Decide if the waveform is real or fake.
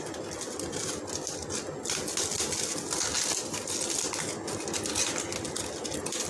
real